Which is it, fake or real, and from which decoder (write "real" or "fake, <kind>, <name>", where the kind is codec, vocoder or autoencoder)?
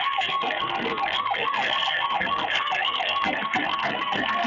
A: fake, codec, SNAC